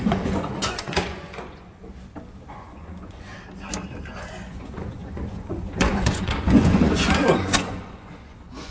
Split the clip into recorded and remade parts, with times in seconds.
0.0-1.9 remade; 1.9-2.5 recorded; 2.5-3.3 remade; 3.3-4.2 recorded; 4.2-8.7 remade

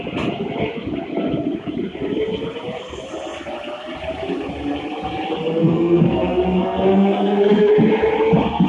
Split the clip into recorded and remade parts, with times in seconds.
0.0-5.6 recorded; 5.6-7.7 remade; 7.7-8.7 recorded

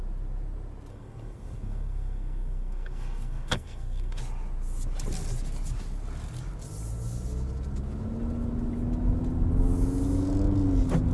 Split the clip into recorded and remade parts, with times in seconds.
0.0-0.9 recorded; 0.9-4.2 remade; 4.2-11.1 recorded